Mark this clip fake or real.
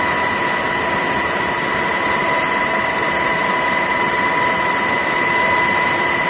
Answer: real